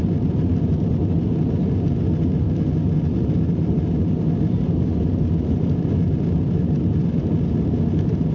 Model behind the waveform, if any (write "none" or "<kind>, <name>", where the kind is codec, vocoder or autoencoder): none